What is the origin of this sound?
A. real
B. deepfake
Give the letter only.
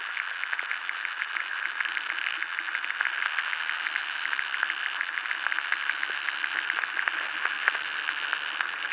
A